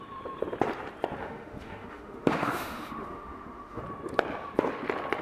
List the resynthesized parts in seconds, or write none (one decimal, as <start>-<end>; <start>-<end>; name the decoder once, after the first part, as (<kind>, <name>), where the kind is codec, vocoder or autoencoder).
1.2-3.8 (autoencoder, DAC-VAE)

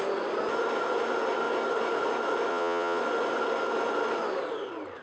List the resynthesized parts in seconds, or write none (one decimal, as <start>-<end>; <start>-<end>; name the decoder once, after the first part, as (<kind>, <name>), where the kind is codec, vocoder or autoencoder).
2.5-3.0 (vocoder, WaveNeXt)